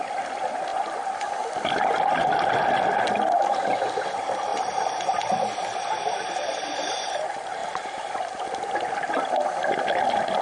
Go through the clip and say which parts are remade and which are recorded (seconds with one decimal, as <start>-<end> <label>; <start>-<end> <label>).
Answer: 0.0-10.4 recorded

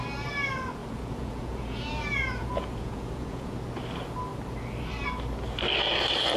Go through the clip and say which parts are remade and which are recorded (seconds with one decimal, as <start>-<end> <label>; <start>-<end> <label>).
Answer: 0.0-0.8 recorded; 0.8-3.6 remade; 3.6-6.4 recorded

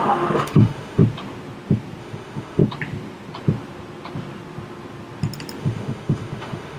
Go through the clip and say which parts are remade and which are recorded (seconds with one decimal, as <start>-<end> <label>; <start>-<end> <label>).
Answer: 0.0-1.0 remade; 1.0-2.0 recorded; 2.0-2.6 remade; 2.6-5.6 recorded; 5.6-6.8 remade

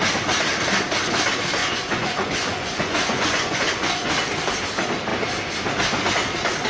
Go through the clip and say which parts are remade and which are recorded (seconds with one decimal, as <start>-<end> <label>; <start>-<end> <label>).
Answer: 0.0-1.6 recorded; 1.6-4.1 remade; 4.1-6.7 recorded

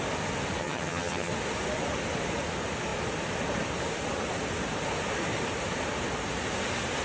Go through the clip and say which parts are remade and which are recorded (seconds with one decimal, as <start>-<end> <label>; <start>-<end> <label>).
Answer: 0.0-0.6 recorded; 0.6-1.3 remade; 1.3-7.0 recorded